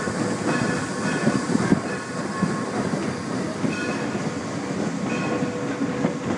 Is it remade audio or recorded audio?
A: recorded